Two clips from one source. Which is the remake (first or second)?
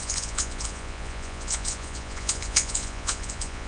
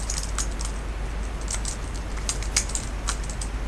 first